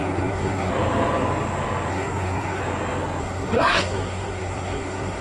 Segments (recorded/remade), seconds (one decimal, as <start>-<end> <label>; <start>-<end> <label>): 0.0-0.7 remade; 0.7-1.9 recorded; 1.9-2.6 remade; 2.6-3.2 recorded; 3.2-5.2 remade